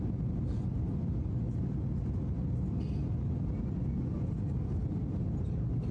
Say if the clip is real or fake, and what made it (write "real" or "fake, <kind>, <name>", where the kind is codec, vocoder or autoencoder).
real